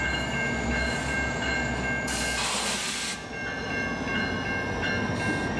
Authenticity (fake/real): real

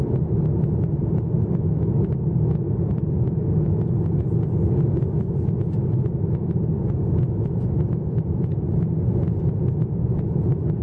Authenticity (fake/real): real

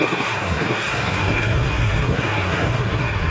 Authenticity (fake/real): fake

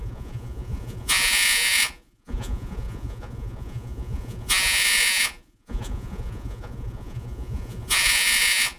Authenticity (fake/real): fake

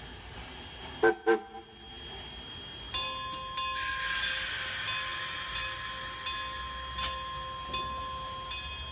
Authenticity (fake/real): real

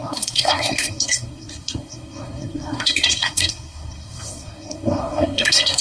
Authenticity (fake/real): fake